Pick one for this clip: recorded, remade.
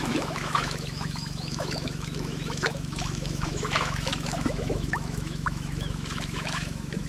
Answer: remade